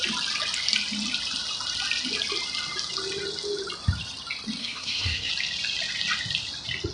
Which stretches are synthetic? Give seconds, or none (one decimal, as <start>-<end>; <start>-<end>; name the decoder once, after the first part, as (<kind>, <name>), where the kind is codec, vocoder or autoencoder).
4.6-5.3 (codec, SNAC)